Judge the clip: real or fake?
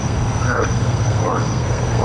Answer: fake